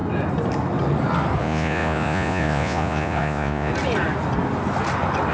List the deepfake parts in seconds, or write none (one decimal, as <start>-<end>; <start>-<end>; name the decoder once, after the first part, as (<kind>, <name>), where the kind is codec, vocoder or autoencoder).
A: 1.4-3.7 (vocoder, Vocos)